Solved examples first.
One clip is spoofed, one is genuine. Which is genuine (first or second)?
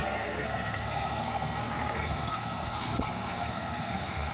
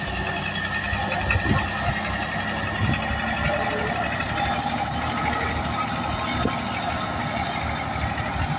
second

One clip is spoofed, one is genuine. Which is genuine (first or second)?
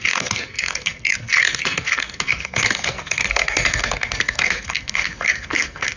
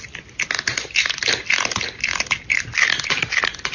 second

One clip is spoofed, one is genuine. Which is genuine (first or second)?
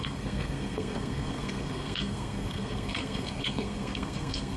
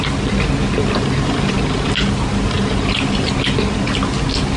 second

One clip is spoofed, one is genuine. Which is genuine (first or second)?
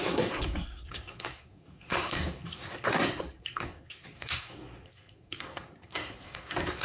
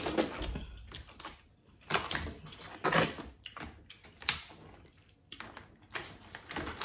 second